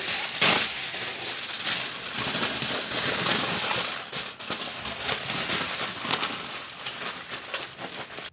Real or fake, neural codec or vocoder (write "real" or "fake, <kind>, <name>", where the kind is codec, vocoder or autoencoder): real